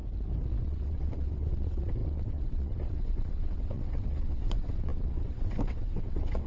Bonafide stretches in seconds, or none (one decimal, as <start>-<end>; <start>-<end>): 0.0-0.6

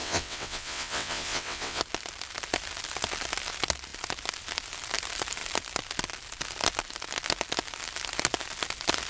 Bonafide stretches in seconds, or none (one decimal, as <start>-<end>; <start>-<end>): 1.8-9.1

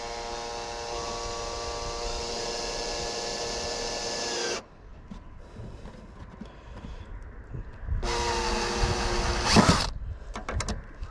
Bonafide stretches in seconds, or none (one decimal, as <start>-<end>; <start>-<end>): 0.0-11.1